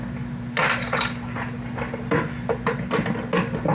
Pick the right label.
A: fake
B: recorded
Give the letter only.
B